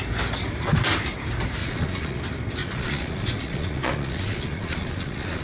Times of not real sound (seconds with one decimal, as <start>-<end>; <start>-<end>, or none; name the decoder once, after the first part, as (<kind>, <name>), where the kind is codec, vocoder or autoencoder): 1.6-2.2 (vocoder, Vocos); 2.6-5.4